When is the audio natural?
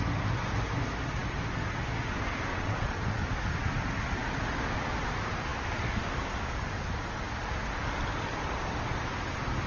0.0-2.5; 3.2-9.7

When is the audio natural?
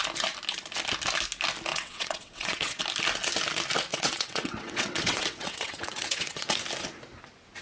0.0-1.7; 2.8-3.9; 6.6-7.6